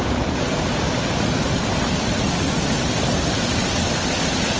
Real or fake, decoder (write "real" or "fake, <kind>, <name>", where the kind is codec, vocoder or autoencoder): real